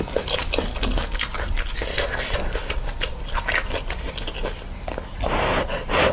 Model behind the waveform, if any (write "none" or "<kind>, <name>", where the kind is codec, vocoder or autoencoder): none